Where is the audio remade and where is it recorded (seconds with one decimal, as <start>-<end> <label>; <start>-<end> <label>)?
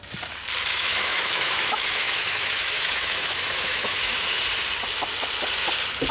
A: 0.0-0.7 recorded; 0.7-4.4 remade; 4.4-6.1 recorded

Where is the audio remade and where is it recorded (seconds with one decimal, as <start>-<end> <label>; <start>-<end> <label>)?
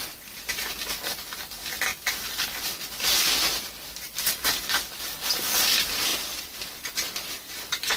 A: 0.0-1.9 recorded; 1.9-5.0 remade; 5.0-6.1 recorded; 6.1-6.7 remade; 6.7-8.0 recorded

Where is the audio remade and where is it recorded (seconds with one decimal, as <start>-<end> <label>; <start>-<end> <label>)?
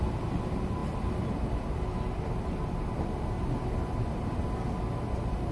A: 0.0-5.5 recorded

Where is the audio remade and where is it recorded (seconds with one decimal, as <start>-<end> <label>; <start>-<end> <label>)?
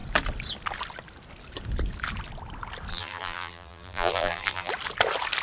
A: 0.0-2.9 recorded; 2.9-4.7 remade; 4.7-5.4 recorded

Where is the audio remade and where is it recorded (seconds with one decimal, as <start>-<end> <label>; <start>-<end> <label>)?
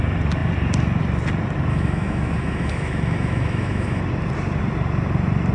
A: 0.0-1.7 recorded; 1.7-4.0 remade; 4.0-5.5 recorded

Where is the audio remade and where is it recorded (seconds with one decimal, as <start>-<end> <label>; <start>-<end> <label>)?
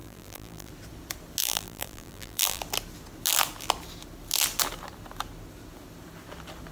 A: 0.0-0.7 remade; 0.7-1.4 recorded; 1.4-2.6 remade; 2.6-6.7 recorded